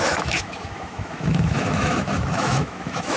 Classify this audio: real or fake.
fake